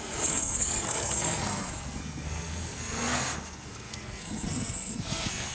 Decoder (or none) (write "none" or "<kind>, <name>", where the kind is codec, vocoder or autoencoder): codec, SNAC